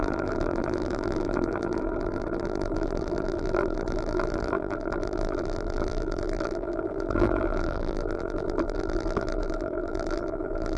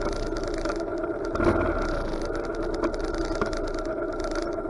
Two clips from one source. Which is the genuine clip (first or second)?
second